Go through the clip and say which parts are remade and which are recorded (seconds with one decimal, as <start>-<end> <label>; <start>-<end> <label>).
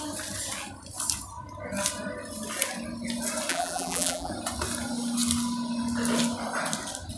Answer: 0.0-3.5 recorded; 3.5-4.3 remade; 4.3-7.2 recorded